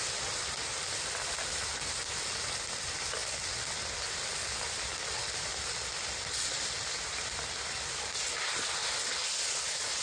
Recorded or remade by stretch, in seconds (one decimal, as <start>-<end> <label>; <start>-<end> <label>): 0.0-10.0 recorded